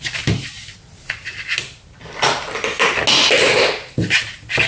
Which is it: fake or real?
real